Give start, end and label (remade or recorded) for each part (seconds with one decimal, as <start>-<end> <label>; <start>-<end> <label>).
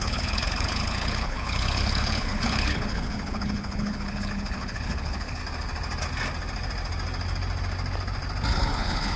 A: 0.0-5.4 remade; 5.4-8.5 recorded; 8.5-9.2 remade